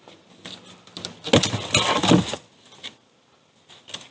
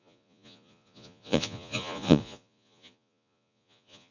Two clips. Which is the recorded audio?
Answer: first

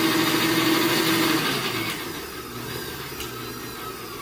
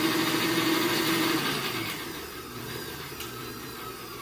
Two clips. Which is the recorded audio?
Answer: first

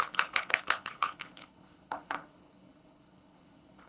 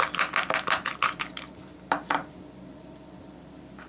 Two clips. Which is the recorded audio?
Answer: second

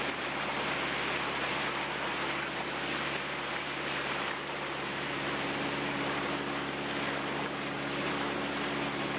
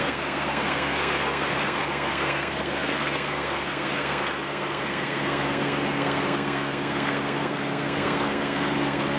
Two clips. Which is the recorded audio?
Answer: first